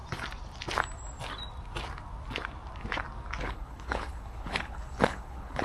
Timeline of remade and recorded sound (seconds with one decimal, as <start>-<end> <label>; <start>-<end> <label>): 0.0-3.4 recorded; 3.4-5.6 remade

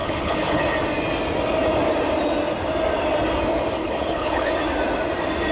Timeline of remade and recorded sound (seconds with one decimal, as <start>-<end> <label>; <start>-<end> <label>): 0.0-0.6 remade; 0.6-3.8 recorded; 3.8-4.5 remade; 4.5-5.5 recorded

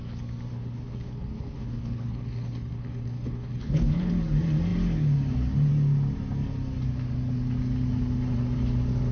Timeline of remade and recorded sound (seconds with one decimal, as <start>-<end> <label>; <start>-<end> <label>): 0.0-0.5 recorded; 0.5-4.1 remade; 4.1-9.1 recorded

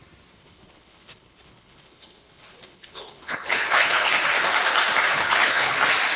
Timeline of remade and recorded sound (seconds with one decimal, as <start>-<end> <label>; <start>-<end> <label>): 0.0-0.4 recorded; 0.4-4.1 remade; 4.1-5.1 recorded; 5.1-5.8 remade; 5.8-6.2 recorded

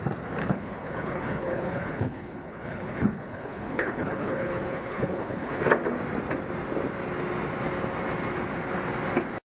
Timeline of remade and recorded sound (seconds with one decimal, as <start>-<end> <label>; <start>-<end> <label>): 0.0-0.4 recorded; 0.4-5.6 remade; 5.6-9.4 recorded